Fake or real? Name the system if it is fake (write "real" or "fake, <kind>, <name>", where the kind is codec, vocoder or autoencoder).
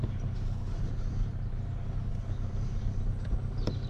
real